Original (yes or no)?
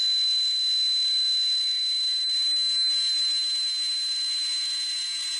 yes